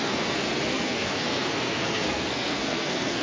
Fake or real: fake